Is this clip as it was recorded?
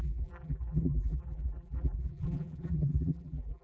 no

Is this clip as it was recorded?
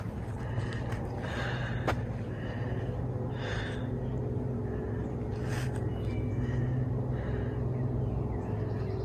yes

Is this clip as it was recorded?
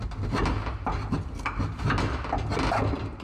yes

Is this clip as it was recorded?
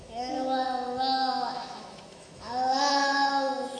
no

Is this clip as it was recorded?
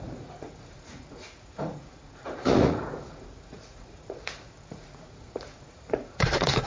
no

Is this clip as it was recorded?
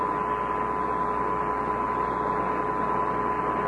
yes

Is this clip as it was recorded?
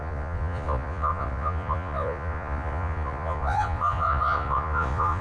no